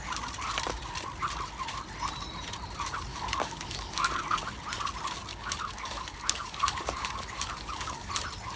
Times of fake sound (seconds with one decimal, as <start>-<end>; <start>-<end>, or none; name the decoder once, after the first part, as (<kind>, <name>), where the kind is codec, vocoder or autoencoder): 3.1-4.4 (codec, DAC); 5.3-8.1